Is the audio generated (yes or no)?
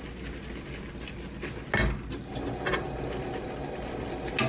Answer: no